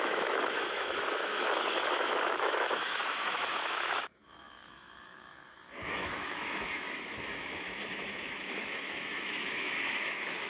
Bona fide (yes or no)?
no